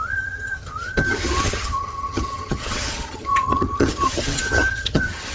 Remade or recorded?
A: remade